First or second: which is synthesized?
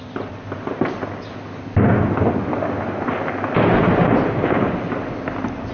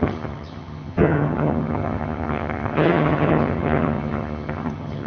second